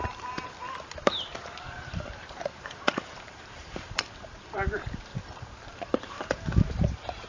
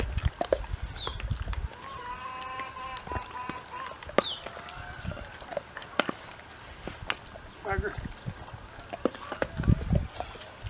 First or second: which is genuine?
second